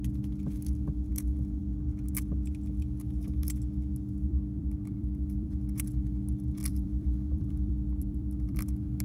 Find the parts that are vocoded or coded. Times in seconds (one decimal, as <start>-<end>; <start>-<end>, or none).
4.3-5.5; 6.6-8.6

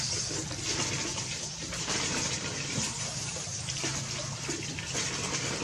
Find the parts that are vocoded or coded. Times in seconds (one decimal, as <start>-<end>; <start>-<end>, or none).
1.1-3.6

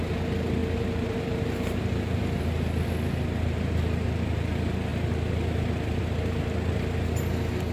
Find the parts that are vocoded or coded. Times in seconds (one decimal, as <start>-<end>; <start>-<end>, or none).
0.6-2.4

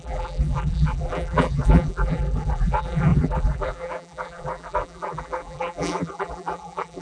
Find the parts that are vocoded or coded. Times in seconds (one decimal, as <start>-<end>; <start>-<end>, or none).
0.0-7.0

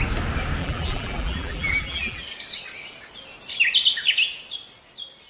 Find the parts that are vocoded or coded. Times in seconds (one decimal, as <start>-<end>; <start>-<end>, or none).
0.6-2.2

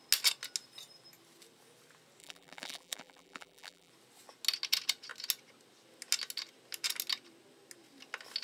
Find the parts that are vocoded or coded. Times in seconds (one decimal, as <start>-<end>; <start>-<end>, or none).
2.2-3.9

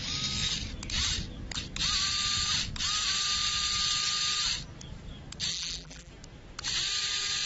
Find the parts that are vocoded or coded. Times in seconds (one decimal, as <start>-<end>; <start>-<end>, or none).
5.5-6.1

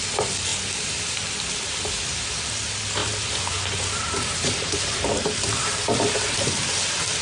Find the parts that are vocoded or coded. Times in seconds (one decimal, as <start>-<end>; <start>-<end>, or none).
3.0-6.5